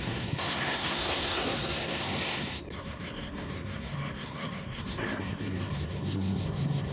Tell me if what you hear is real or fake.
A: fake